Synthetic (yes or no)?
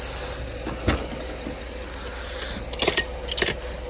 no